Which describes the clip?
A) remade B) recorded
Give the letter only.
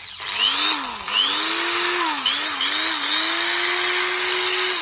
B